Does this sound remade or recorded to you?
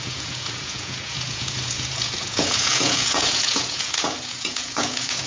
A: remade